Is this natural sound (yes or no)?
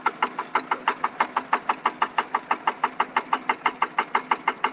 yes